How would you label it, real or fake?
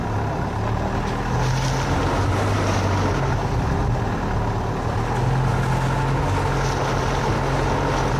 real